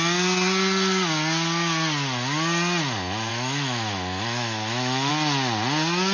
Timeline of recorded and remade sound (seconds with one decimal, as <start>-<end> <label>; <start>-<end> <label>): 0.0-3.3 recorded; 3.3-5.1 remade; 5.1-6.1 recorded

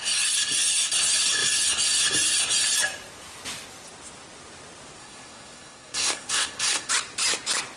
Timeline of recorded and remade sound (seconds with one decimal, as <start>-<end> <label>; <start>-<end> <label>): 0.0-5.0 recorded; 5.0-6.9 remade; 6.9-7.8 recorded

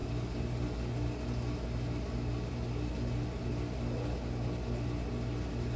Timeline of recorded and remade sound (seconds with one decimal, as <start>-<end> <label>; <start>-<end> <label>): 0.0-5.8 recorded

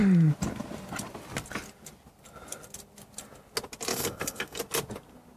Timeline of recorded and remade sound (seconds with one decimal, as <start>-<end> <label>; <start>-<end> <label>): 0.0-3.9 recorded; 3.9-4.6 remade; 4.6-5.4 recorded

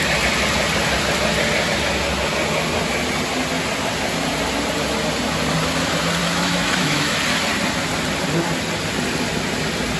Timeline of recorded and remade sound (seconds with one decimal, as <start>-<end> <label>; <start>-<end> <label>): 0.0-6.2 recorded; 6.2-7.2 remade; 7.2-10.0 recorded

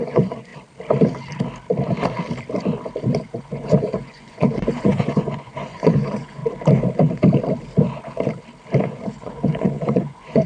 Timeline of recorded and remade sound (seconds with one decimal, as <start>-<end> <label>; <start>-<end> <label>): 0.0-0.5 remade; 0.5-3.2 recorded; 3.2-6.4 remade; 6.4-8.8 recorded; 8.8-10.5 remade

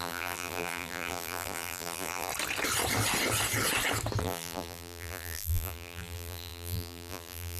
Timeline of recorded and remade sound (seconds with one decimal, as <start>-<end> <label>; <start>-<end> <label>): 0.0-2.3 remade; 2.3-4.2 recorded; 4.2-7.6 remade